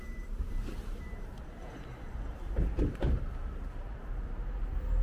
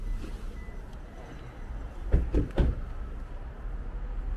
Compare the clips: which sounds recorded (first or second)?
second